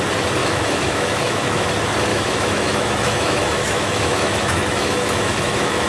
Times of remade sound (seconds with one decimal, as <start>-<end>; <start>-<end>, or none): 0.4-1.7; 2.1-5.9